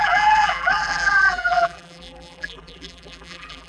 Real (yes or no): no